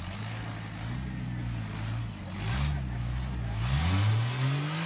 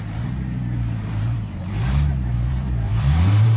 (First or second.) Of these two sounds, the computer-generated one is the second